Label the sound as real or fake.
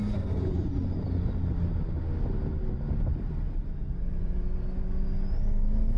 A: real